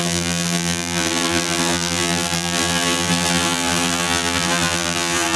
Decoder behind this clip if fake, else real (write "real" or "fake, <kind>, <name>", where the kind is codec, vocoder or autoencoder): fake, vocoder, BigVGAN v2